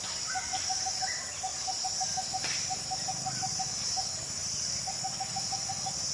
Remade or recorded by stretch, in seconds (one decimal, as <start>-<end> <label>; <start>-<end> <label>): 0.0-6.1 recorded